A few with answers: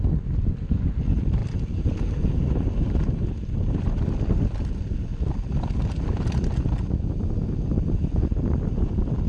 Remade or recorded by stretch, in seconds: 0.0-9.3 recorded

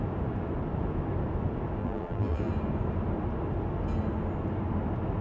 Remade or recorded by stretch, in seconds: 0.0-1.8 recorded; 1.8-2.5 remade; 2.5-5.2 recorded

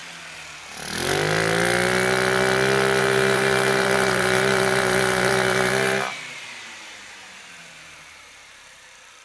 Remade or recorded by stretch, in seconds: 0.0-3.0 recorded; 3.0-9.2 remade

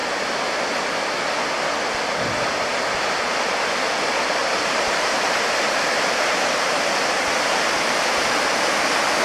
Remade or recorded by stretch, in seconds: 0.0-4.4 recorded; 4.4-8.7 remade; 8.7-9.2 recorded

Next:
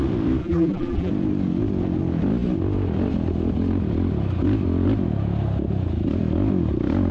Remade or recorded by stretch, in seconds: 0.0-0.4 recorded; 0.4-1.1 remade; 1.1-7.1 recorded